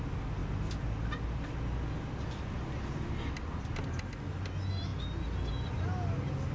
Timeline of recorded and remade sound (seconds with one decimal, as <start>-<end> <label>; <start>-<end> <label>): 0.0-6.5 recorded